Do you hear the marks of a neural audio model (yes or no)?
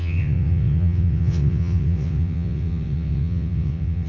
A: yes